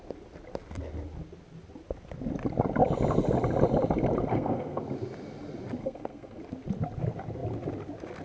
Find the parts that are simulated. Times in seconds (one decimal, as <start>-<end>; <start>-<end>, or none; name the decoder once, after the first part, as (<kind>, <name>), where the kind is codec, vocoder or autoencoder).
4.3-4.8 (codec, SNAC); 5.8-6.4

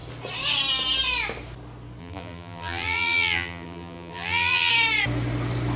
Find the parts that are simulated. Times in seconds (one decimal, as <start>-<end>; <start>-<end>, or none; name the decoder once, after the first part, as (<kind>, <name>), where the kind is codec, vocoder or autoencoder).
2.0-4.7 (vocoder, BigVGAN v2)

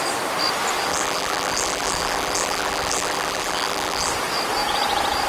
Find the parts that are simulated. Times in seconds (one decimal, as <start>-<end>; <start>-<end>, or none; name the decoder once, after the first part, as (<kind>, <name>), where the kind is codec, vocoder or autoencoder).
0.9-4.1 (vocoder, BigVGAN v2)

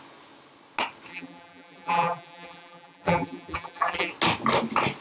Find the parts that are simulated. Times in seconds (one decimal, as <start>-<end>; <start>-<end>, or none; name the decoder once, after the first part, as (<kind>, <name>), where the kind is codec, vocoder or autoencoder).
1.1-4.1 (vocoder, BigVGAN v2)